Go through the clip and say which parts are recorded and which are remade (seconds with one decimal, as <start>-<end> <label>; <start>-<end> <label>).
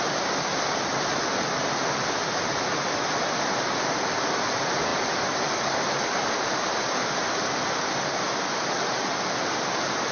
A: 0.0-10.1 recorded